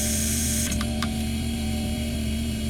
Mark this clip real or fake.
fake